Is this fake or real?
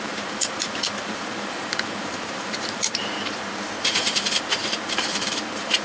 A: fake